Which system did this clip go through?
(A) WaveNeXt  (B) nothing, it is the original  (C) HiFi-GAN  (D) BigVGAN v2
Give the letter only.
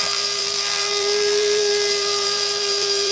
D